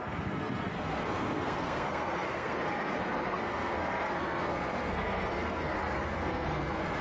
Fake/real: fake